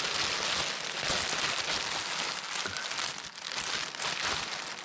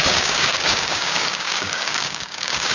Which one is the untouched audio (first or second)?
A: first